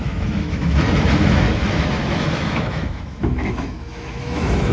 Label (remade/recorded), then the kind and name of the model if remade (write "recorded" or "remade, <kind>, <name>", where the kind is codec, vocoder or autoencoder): remade, autoencoder, DAC-VAE